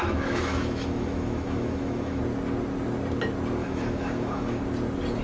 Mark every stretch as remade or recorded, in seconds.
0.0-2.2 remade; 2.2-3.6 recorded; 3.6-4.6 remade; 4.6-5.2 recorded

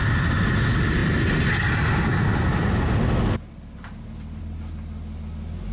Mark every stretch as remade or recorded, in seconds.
0.0-5.7 recorded

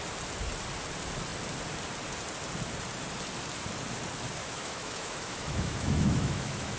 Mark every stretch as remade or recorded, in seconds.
0.0-4.4 recorded; 4.4-6.8 remade

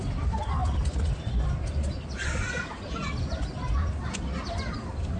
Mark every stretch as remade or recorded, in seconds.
0.0-5.2 recorded